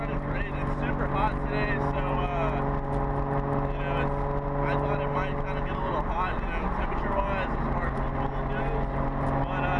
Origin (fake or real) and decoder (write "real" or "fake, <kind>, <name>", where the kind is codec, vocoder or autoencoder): real